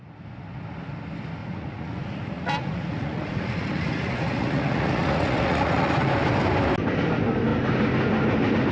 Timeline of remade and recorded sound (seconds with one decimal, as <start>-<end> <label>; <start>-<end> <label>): 0.0-1.4 recorded; 1.4-6.1 remade; 6.1-8.7 recorded

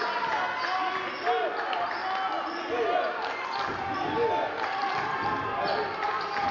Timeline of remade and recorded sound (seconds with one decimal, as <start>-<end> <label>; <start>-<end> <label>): 0.0-6.5 recorded